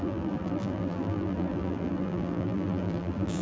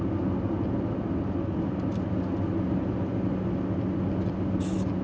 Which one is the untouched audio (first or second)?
second